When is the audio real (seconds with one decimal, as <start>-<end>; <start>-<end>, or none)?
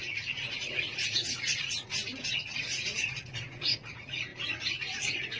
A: none